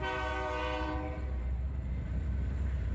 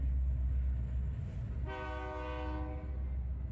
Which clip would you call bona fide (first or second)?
second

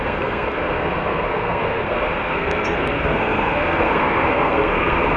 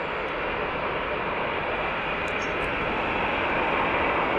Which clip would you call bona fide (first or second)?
second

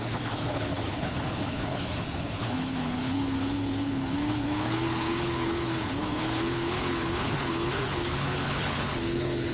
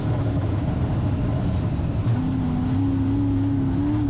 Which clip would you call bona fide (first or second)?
second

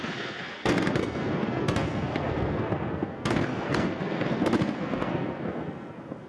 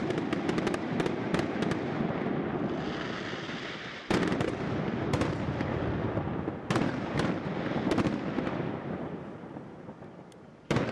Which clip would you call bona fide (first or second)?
second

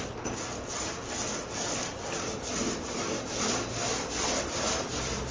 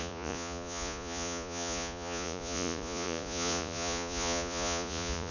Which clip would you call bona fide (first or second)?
first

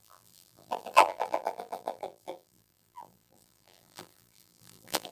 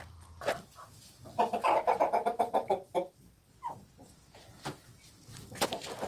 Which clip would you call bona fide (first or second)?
second